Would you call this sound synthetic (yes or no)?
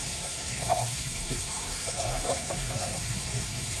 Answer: yes